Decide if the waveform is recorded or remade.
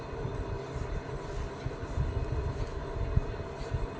recorded